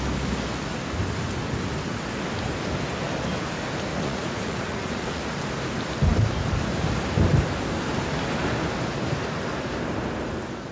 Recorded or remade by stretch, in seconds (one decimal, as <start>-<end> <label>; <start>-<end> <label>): 0.0-3.9 recorded; 3.9-5.4 remade; 5.4-10.7 recorded